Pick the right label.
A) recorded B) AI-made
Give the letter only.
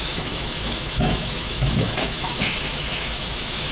B